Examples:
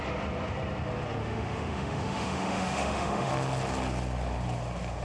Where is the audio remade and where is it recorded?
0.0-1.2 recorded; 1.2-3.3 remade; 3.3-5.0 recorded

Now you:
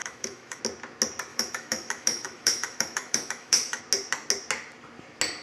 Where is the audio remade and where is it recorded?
0.0-0.6 remade; 0.6-1.3 recorded; 1.3-3.8 remade; 3.8-5.4 recorded

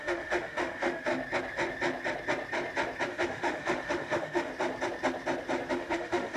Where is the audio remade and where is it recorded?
0.0-1.1 remade; 1.1-3.1 recorded; 3.1-4.5 remade; 4.5-5.7 recorded; 5.7-6.4 remade

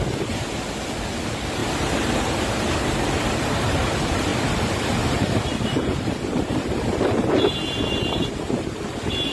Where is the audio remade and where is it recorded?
0.0-9.3 recorded